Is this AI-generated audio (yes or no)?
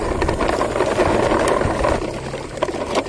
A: no